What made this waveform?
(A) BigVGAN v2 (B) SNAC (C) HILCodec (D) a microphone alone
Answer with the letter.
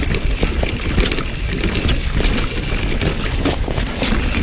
D